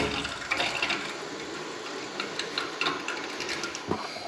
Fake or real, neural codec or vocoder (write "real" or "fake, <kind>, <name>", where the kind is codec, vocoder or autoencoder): real